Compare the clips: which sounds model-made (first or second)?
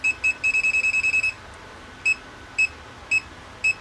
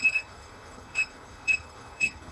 second